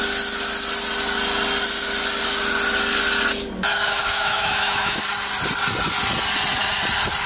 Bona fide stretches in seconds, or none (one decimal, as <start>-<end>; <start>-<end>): 0.0-3.7; 5.0-7.3